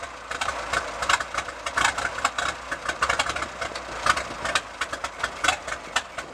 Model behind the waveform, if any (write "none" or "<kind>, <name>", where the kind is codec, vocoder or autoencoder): none